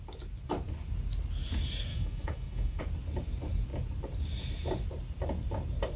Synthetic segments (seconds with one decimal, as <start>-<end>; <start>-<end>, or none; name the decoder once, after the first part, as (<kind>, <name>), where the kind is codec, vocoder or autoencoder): 1.9-2.8 (autoencoder, DAC-VAE)